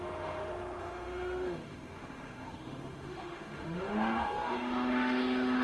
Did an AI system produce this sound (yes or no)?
yes